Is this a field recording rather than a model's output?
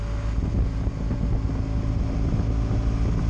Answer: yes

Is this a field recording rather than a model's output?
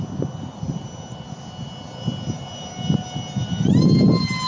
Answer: yes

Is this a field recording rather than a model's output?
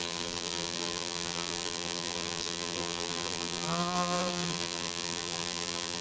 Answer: no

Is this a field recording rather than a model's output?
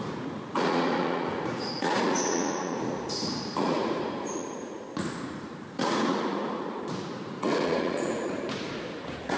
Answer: no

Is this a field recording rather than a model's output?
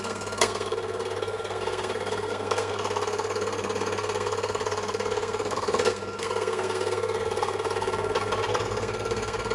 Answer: no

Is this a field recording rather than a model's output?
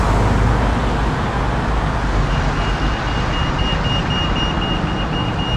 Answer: yes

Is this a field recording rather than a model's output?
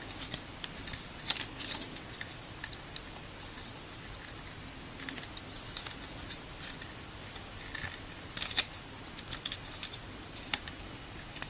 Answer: yes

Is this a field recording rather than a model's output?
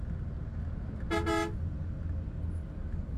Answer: yes